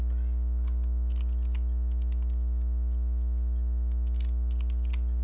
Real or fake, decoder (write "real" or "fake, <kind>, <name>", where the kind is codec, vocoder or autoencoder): real